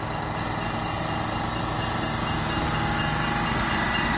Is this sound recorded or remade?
recorded